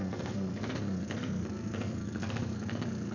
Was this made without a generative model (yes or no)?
no